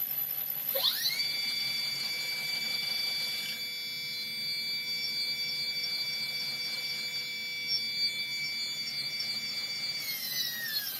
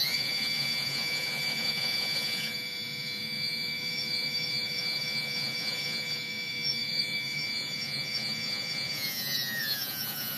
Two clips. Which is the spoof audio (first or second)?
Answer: second